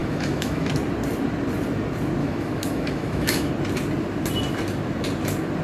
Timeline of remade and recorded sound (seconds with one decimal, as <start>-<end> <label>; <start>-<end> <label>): 0.0-0.7 remade; 0.7-2.2 recorded; 2.2-3.5 remade; 3.5-5.6 recorded